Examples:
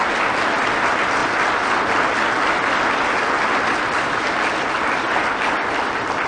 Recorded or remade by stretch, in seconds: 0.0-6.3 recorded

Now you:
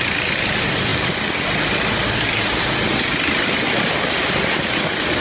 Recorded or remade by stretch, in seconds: 0.0-5.2 recorded

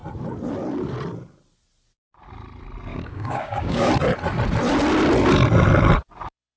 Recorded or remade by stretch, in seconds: 0.0-2.9 recorded; 2.9-3.9 remade; 3.9-6.6 recorded